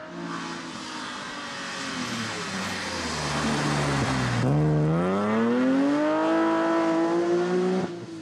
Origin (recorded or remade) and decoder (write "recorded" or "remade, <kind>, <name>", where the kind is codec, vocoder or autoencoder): recorded